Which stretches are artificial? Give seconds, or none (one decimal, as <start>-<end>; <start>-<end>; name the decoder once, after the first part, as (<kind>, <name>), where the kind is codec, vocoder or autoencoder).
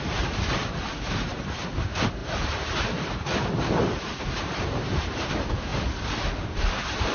0.0-5.7 (vocoder, BigVGAN v2); 6.6-7.1